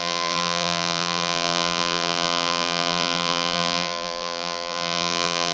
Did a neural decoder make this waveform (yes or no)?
yes